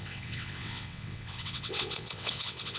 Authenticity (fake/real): fake